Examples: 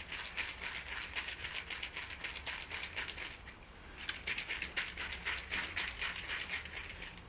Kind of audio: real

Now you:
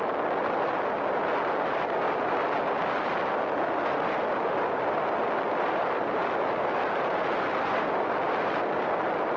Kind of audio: real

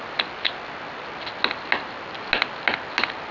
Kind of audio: real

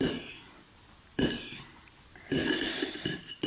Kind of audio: fake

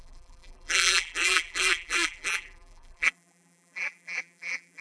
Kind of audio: fake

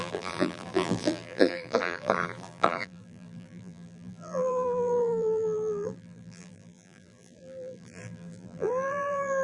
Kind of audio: fake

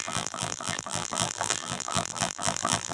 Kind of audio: fake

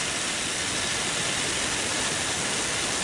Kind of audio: real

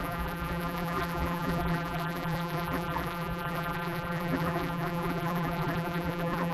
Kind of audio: fake